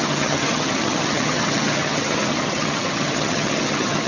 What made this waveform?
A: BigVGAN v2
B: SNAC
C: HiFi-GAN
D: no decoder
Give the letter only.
C